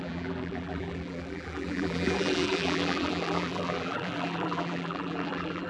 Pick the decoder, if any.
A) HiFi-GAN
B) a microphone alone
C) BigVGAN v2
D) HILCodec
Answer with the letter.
C